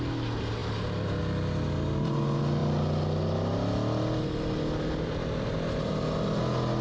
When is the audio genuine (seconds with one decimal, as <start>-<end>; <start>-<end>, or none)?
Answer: 0.0-6.8